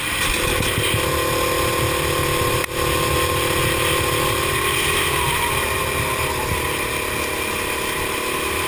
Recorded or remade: recorded